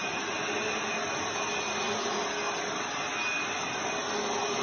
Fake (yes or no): no